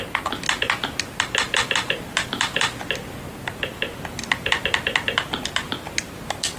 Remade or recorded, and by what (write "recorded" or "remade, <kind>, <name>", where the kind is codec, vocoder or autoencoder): recorded